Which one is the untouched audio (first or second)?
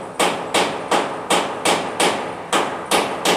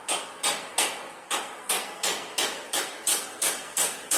first